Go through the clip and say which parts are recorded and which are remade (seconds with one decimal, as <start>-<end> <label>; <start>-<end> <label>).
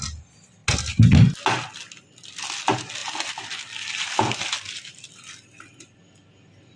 0.0-6.8 recorded